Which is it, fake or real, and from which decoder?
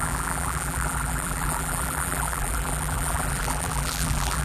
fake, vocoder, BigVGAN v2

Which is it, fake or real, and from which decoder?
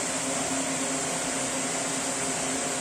real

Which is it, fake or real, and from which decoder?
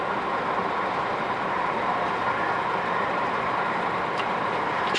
real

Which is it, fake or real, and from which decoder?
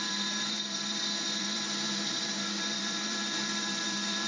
fake, vocoder, BigVGAN v2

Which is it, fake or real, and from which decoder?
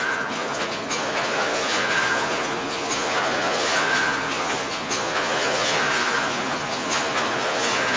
fake, vocoder, Vocos